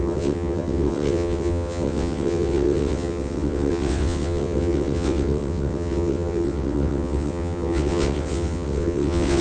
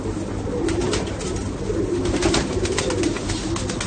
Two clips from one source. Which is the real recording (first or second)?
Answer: second